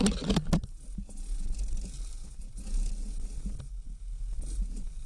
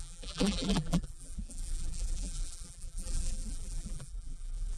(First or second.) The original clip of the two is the first